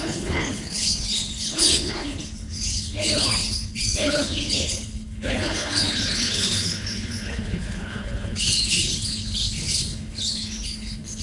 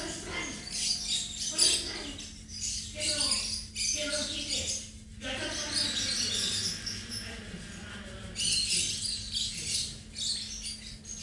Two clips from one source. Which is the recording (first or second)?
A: second